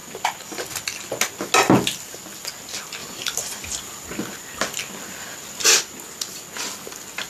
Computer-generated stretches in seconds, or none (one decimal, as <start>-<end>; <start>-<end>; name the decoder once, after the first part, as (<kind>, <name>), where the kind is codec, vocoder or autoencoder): none